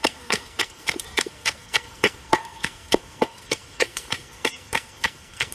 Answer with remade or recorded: remade